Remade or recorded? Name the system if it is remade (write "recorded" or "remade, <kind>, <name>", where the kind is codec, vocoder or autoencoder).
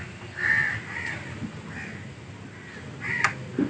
recorded